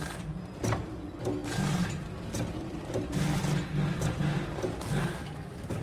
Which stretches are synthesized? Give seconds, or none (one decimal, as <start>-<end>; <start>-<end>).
none